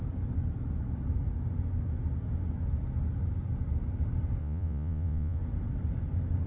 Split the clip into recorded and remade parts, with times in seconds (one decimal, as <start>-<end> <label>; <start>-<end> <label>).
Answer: 0.0-4.4 recorded; 4.4-5.4 remade; 5.4-6.5 recorded